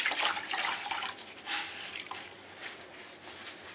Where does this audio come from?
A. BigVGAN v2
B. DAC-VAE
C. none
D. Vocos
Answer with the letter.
C